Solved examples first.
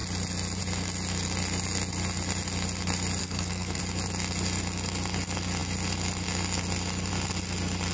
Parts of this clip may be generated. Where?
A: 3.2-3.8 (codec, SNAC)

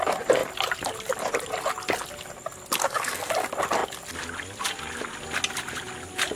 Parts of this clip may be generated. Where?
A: 2.8-3.3 (codec, SNAC)

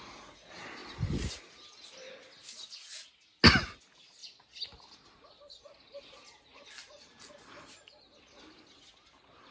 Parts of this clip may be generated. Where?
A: none